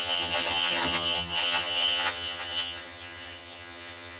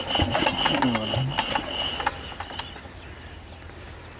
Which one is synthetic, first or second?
first